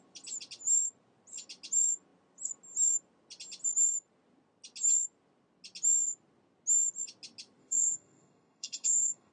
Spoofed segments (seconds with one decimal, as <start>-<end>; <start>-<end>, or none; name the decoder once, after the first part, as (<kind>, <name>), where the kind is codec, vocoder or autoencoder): 7.6-9.3 (codec, SNAC)